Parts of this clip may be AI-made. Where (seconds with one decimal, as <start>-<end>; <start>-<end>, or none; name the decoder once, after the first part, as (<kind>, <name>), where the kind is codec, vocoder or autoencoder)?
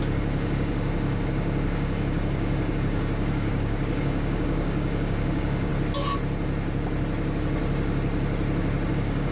0.0-5.7 (codec, DAC); 8.9-9.3